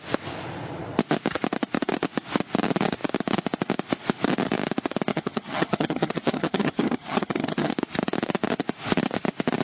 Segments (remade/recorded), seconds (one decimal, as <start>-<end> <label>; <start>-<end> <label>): 0.0-5.1 recorded; 5.1-7.7 remade; 7.7-9.6 recorded